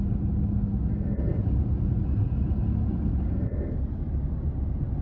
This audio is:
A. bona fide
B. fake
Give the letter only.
A